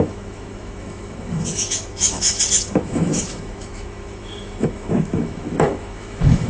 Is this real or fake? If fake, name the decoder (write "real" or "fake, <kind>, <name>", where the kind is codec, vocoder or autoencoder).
fake, autoencoder, DAC-VAE